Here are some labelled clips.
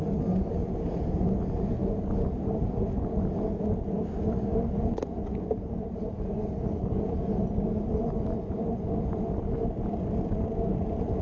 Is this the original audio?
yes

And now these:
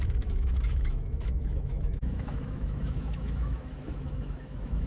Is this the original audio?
no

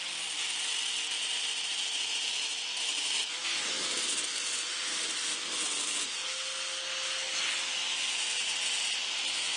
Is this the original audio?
yes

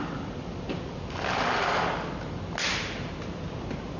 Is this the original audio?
yes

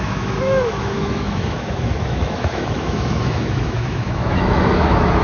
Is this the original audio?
no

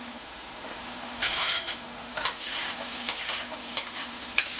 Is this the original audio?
no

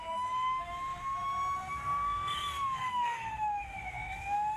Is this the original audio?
no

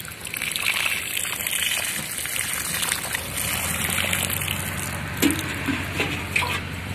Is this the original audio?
yes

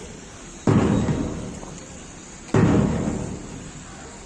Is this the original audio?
yes